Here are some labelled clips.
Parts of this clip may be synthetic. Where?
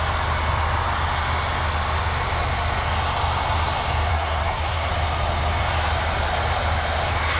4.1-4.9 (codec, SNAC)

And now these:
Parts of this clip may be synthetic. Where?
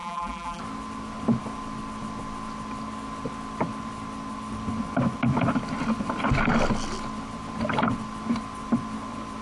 0.0-0.6 (vocoder, BigVGAN v2)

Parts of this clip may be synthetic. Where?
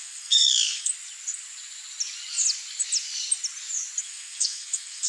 0.0-0.9 (codec, SNAC); 4.0-5.1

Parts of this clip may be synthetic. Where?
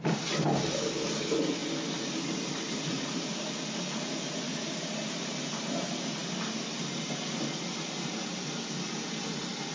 none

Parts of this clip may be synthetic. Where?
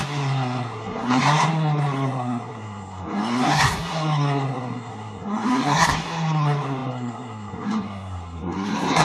0.0-9.0 (codec, SNAC)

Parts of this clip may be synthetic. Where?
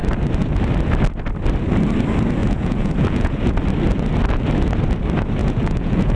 2.4-3.5 (vocoder, Vocos); 5.4-6.2